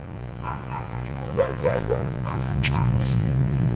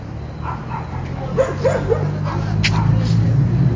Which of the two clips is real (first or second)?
second